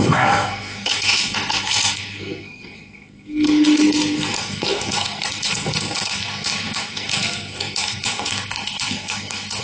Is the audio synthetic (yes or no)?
yes